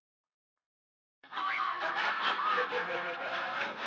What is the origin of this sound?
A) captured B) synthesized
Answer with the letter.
B